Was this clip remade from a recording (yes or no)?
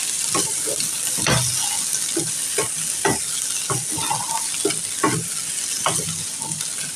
no